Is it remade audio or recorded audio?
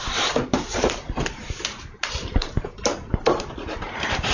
remade